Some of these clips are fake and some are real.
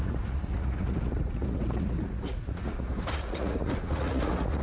fake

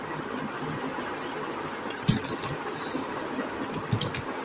real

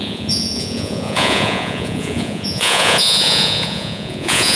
fake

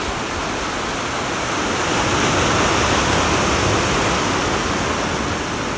real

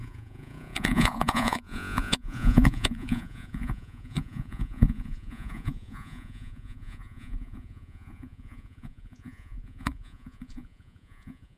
fake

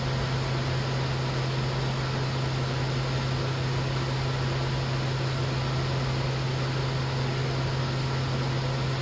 real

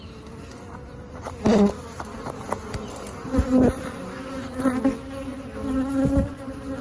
real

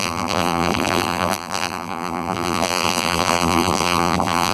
fake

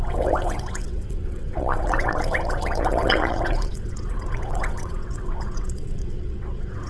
fake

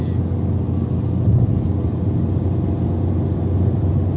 real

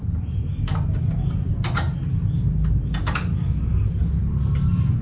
real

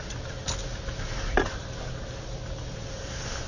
real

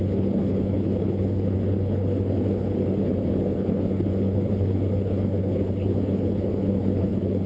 fake